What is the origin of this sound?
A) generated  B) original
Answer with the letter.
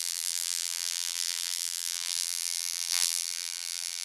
A